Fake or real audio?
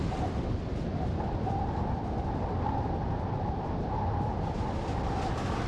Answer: real